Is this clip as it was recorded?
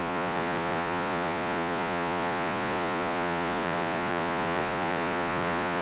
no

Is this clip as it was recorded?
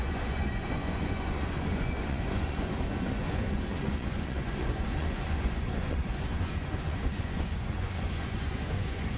no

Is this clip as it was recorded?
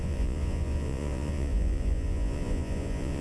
no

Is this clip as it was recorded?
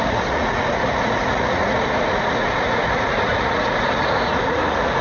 no